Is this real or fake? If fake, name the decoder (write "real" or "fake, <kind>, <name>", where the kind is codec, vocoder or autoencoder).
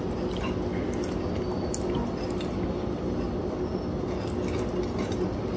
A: real